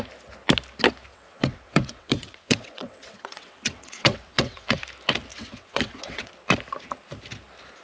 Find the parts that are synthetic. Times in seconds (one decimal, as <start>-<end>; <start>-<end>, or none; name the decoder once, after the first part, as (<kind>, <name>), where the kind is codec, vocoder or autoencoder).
1.1-4.8 (vocoder, WaveNeXt); 5.3-6.3